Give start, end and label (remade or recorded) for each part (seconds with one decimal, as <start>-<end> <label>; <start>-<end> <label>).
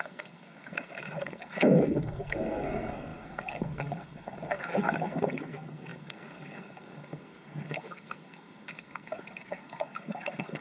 0.0-10.6 remade